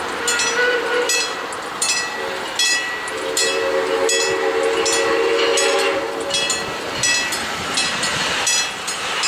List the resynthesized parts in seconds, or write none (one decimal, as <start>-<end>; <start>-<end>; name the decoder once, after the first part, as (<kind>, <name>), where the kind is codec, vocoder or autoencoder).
none